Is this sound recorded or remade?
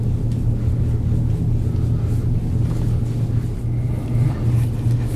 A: recorded